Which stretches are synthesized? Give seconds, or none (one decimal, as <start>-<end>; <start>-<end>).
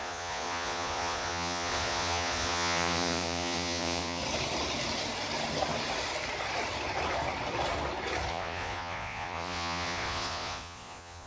0.0-4.2; 8.3-11.3